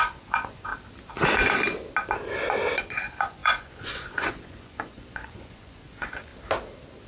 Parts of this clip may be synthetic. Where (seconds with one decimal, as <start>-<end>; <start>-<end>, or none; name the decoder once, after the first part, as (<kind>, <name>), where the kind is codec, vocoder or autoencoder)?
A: 0.0-0.7 (vocoder, Vocos); 2.8-6.3